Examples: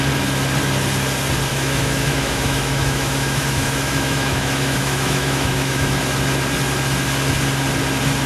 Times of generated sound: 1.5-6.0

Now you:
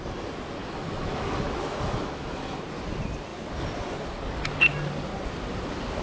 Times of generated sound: 0.6-2.6

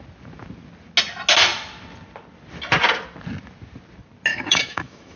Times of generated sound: 4.3-5.2

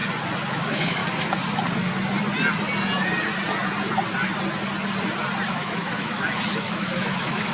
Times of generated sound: 0.5-1.0; 5.5-7.5

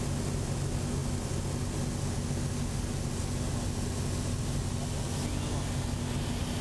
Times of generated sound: none

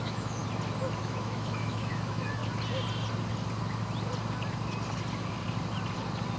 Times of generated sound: 0.0-0.4; 1.0-2.4

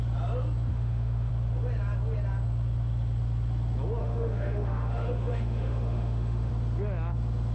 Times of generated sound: 0.7-1.3; 4.0-6.5